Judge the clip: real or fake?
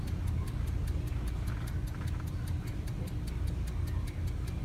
real